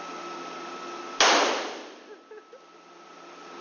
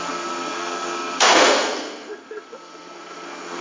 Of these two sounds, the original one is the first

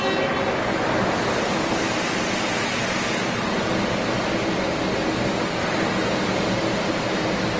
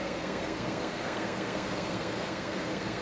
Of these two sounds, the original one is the first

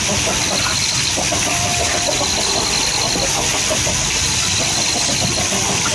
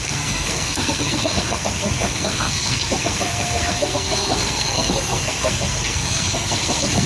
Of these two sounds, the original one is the first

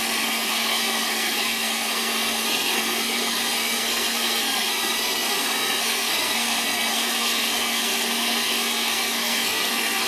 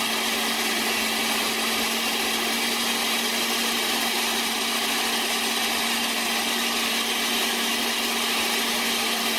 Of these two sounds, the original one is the second